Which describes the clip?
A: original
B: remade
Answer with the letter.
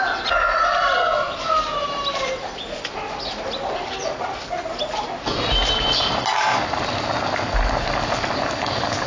A